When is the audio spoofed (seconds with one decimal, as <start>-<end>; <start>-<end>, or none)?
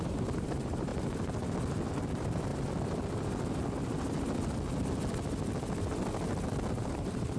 0.0-0.9; 1.9-2.5; 6.7-7.4